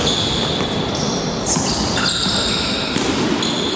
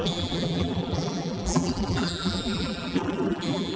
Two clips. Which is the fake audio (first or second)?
second